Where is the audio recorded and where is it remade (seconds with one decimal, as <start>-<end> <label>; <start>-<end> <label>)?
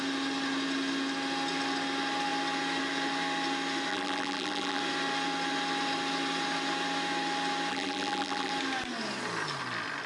0.0-3.9 recorded; 3.9-4.8 remade; 4.8-7.7 recorded; 7.7-8.5 remade; 8.5-10.1 recorded